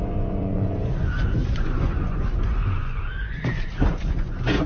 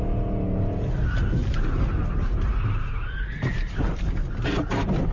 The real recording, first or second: second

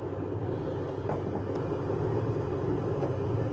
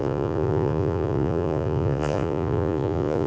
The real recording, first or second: first